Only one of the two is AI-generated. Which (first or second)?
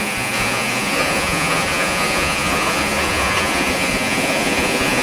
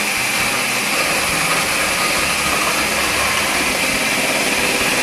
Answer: first